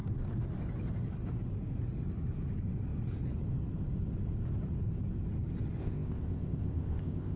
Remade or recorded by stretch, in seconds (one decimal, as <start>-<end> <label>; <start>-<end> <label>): 0.0-5.8 recorded; 5.8-7.4 remade